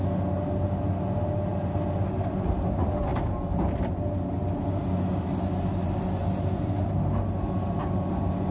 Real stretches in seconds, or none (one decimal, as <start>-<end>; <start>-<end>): 0.0-8.5